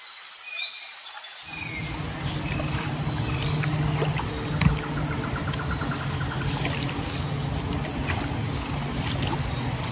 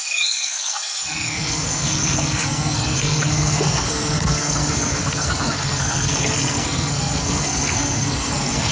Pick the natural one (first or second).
first